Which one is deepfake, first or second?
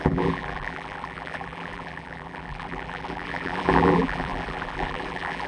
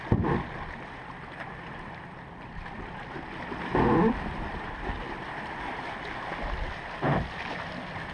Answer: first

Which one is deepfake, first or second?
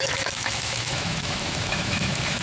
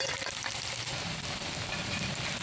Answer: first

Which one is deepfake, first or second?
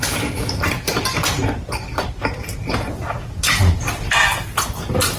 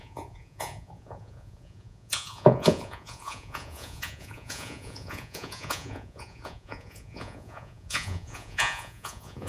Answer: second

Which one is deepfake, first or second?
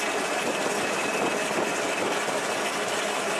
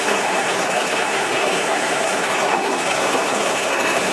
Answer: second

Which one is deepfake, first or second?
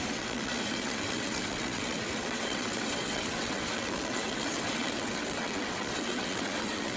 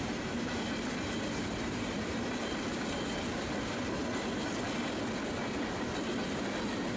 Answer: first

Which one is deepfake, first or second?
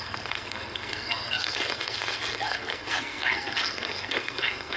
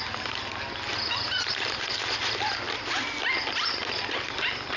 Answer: first